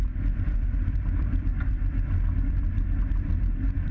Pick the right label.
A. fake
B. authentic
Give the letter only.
A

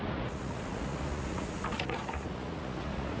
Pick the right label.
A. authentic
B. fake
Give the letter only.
B